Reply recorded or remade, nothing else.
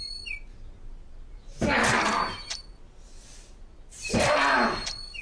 recorded